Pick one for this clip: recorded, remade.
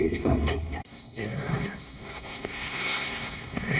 remade